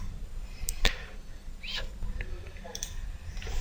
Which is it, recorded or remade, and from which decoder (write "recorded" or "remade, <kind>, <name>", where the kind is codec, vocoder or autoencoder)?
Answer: remade, vocoder, BigVGAN v2